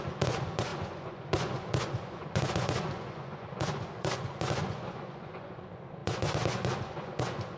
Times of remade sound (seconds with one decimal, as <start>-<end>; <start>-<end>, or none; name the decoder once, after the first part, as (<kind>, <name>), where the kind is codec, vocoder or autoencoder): 0.0-7.6 (vocoder, Vocos)